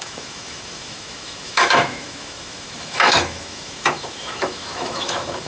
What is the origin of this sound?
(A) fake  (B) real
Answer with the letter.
A